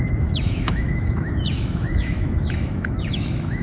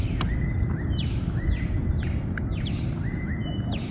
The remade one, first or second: first